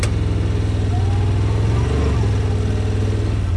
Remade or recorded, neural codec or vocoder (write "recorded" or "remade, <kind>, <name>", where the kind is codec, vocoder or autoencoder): recorded